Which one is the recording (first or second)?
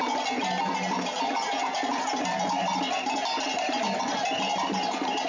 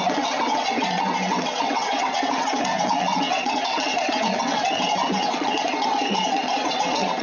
first